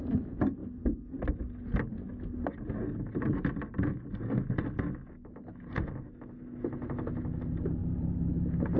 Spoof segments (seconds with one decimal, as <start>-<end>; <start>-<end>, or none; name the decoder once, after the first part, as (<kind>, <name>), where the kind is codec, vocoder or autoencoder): 7.8-8.3 (vocoder, BigVGAN v2)